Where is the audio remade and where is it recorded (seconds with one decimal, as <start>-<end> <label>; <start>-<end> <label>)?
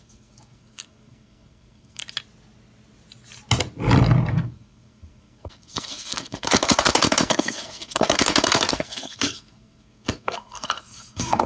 0.0-2.0 remade; 2.0-4.3 recorded; 4.3-11.5 remade